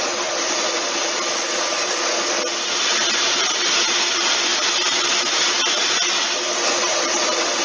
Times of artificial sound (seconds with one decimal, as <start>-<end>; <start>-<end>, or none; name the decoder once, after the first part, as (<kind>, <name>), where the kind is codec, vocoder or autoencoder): none

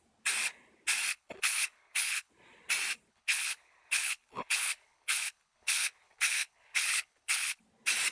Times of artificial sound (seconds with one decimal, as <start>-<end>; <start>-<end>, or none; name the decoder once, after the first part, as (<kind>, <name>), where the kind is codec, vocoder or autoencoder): 1.1-2.3 (codec, HILCodec); 3.1-7.6

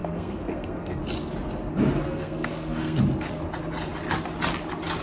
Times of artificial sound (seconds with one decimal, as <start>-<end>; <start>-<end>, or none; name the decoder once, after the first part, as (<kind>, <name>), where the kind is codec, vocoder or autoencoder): 0.0-1.0 (codec, SNAC); 2.0-3.0

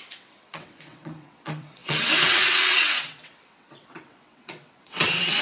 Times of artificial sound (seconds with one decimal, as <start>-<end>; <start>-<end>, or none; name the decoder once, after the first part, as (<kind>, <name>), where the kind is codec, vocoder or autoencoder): 0.0-5.4 (vocoder, WaveNeXt)

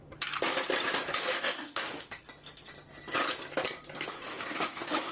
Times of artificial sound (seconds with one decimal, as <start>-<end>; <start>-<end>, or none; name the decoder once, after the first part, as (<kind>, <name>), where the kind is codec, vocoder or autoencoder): 1.3-2.2 (autoencoder, DAC-VAE); 4.3-5.1